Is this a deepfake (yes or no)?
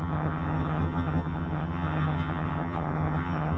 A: yes